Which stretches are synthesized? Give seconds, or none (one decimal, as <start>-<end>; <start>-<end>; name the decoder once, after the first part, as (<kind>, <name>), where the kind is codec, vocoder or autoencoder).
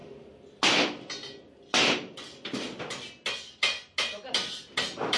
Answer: none